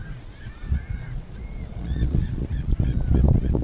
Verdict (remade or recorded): remade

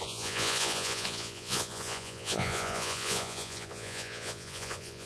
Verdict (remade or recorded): remade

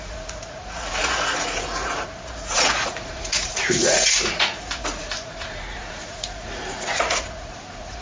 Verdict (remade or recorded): remade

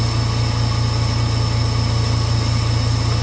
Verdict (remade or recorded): recorded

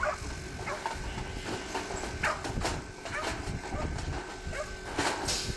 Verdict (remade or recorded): recorded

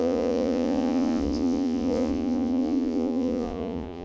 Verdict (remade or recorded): remade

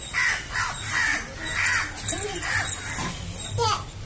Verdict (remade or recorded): recorded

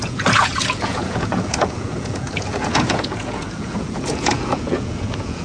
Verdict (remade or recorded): remade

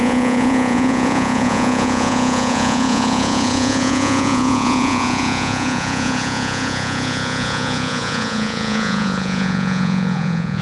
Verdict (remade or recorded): remade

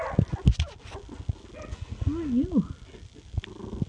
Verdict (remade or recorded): recorded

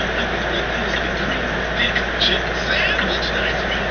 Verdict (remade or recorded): recorded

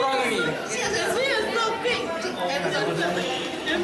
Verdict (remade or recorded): recorded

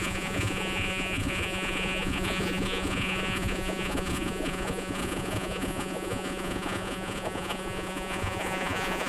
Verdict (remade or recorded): remade